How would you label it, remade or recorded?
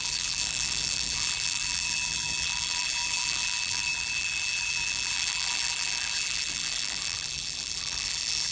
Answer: remade